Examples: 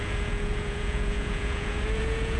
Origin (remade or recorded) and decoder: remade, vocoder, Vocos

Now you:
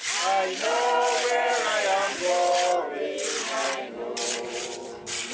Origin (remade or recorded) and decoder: recorded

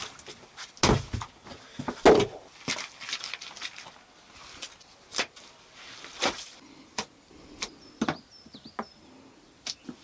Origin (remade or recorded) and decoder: recorded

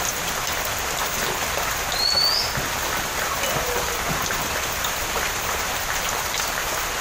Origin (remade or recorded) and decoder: recorded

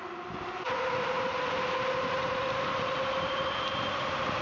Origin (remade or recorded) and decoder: recorded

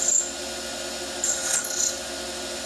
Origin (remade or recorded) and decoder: recorded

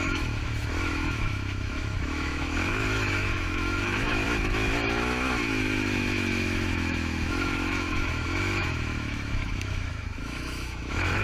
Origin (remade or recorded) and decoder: remade, autoencoder, DAC-VAE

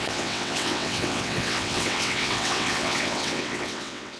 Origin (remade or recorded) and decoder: remade, vocoder, WaveNeXt